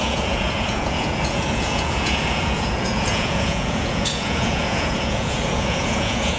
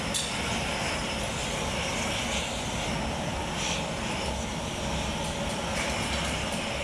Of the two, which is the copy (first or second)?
first